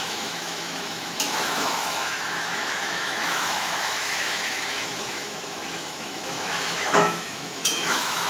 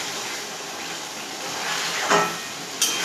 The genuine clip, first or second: second